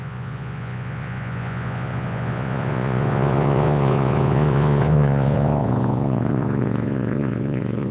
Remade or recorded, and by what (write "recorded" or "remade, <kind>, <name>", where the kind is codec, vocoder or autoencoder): remade, vocoder, Vocos